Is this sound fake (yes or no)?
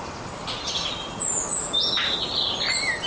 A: no